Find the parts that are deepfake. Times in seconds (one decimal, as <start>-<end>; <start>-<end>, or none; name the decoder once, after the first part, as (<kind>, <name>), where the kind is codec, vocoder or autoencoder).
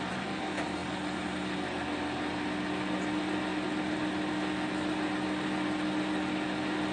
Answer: none